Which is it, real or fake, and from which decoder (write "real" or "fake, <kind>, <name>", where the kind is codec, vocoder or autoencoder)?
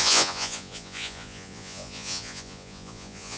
fake, vocoder, Vocos